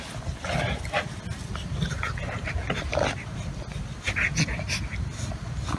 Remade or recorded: recorded